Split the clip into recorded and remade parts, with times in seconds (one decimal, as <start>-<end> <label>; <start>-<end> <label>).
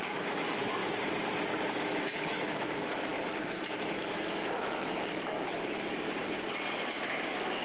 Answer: 0.0-0.8 remade; 0.8-1.7 recorded; 1.7-6.2 remade; 6.2-6.9 recorded; 6.9-7.6 remade